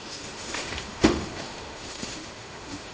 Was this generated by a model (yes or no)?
yes